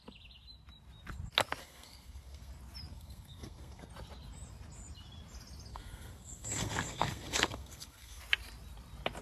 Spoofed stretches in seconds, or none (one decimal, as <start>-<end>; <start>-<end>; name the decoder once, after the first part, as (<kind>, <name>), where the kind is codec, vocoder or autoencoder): 1.6-2.5 (codec, SNAC); 2.9-3.9; 5.7-8.2